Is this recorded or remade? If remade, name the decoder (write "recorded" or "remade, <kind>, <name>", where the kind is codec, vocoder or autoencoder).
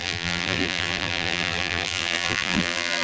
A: remade, vocoder, BigVGAN v2